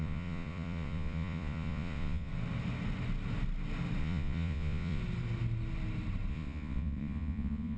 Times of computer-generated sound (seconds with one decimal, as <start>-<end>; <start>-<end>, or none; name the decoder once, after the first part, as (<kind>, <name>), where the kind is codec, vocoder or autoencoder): 0.0-2.3 (vocoder, Vocos); 4.0-5.0; 6.3-7.8